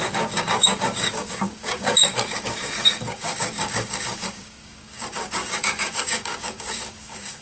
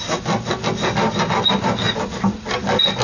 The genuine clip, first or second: second